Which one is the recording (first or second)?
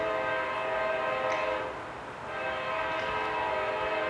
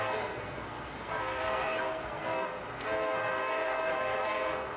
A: first